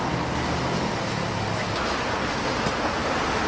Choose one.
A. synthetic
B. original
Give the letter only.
B